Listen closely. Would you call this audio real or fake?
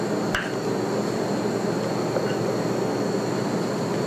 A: real